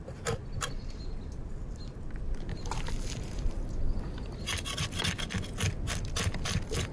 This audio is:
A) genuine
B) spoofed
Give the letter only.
A